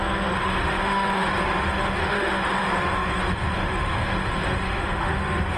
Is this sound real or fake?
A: fake